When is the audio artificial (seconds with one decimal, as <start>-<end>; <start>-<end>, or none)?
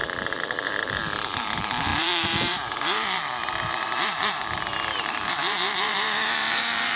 0.0-7.0